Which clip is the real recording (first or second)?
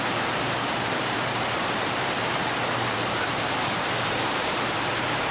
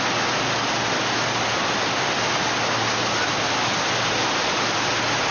second